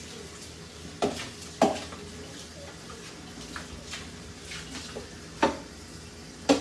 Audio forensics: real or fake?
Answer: real